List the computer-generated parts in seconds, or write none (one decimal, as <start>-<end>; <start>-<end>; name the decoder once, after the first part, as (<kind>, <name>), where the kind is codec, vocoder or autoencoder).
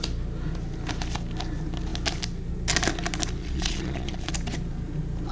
3.4-4.3 (vocoder, Vocos)